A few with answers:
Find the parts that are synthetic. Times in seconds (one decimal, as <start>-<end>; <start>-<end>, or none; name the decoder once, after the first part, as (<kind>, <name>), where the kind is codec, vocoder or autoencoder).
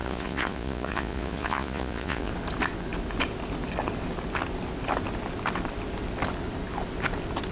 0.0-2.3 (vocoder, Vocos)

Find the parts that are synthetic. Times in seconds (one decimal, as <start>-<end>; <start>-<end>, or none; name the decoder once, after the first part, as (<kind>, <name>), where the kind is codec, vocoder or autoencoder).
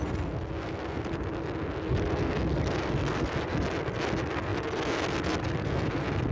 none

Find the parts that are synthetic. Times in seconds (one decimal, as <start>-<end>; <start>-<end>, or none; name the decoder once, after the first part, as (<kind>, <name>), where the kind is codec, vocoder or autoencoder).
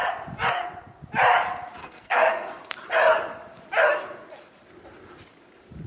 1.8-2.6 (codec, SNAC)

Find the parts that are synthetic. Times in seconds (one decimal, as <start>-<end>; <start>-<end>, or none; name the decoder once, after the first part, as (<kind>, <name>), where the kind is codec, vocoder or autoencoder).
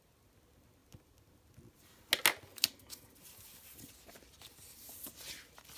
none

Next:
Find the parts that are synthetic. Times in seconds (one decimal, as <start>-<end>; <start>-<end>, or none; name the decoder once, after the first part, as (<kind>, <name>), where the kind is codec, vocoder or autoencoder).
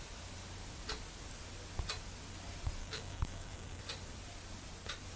2.8-3.8 (autoencoder, DAC-VAE)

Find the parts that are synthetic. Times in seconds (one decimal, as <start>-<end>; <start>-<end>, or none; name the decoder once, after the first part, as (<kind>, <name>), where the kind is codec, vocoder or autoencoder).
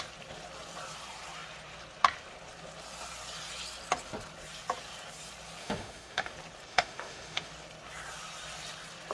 5.6-6.3 (autoencoder, DAC-VAE); 6.7-7.5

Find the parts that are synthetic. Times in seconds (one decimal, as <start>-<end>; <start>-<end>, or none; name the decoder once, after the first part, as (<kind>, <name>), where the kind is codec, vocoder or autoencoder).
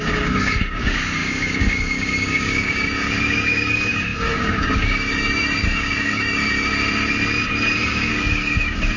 0.0-6.4 (codec, DAC); 7.8-9.0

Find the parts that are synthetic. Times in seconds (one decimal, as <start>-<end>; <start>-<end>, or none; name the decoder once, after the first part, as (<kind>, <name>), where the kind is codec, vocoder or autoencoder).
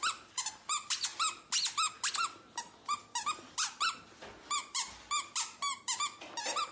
none